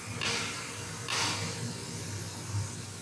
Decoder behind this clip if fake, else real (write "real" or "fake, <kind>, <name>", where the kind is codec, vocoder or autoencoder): real